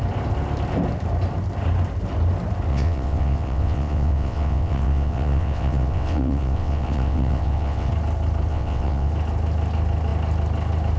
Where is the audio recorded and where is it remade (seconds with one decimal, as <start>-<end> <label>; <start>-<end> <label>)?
0.0-2.7 recorded; 2.7-7.9 remade; 7.9-8.5 recorded; 8.5-9.1 remade; 9.1-11.0 recorded